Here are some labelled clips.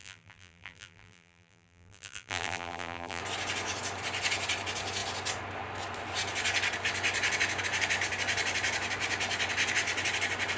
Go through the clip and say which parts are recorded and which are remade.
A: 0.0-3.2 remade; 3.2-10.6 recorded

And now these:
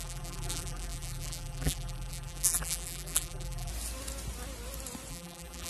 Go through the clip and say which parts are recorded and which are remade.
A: 0.0-3.7 remade; 3.7-5.1 recorded; 5.1-5.7 remade

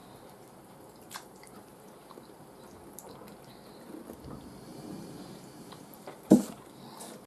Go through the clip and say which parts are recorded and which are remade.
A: 0.0-3.1 remade; 3.1-4.7 recorded; 4.7-6.8 remade; 6.8-7.3 recorded

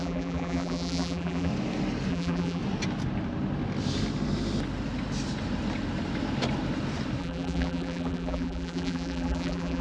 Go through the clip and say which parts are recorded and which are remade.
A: 0.0-1.5 remade; 1.5-2.1 recorded; 2.1-2.6 remade; 2.6-7.2 recorded; 7.2-9.8 remade

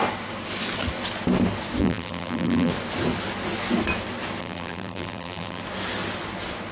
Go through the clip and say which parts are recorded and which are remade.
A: 0.0-1.8 recorded; 1.8-2.7 remade; 2.7-4.4 recorded; 4.4-5.6 remade; 5.6-6.7 recorded

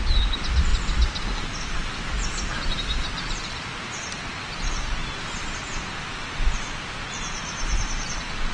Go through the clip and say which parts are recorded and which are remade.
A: 0.0-0.7 remade; 0.7-1.6 recorded; 1.6-8.5 remade